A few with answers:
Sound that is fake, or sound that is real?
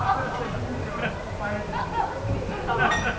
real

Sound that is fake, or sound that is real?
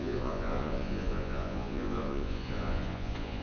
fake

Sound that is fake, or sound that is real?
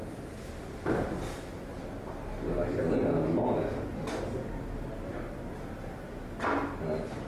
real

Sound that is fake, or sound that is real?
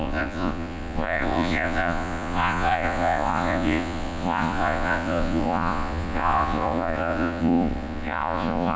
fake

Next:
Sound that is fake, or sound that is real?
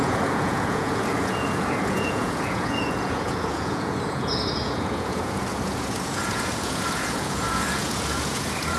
fake